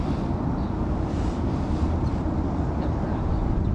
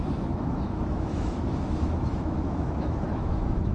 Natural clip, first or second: first